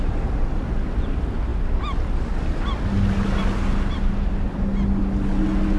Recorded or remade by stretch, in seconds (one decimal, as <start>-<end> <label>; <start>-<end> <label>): 0.0-5.8 recorded